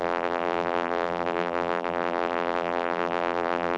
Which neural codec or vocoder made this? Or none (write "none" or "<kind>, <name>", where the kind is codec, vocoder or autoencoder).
vocoder, BigVGAN v2